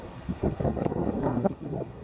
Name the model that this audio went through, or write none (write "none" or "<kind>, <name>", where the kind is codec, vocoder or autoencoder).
codec, SNAC